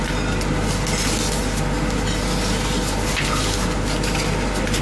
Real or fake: real